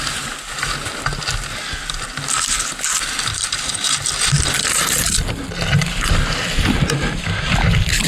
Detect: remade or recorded recorded